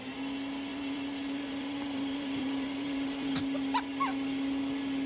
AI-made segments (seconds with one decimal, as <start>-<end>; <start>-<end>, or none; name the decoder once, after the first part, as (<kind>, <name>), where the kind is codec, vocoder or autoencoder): 0.7-3.4 (vocoder, BigVGAN v2)